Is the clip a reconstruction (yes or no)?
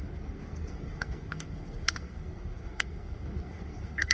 yes